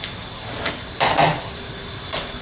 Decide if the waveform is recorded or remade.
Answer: recorded